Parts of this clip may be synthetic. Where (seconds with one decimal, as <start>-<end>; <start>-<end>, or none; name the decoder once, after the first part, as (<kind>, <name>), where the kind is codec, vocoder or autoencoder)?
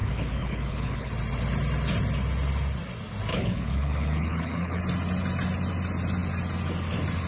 0.0-1.1 (codec, HILCodec); 3.3-4.8